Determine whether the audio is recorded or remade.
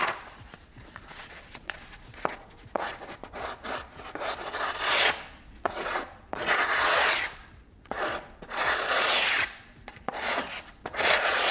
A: remade